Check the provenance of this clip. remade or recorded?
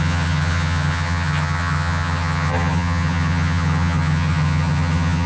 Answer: remade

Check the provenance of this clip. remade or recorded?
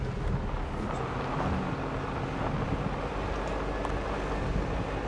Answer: recorded